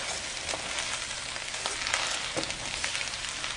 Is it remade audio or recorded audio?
recorded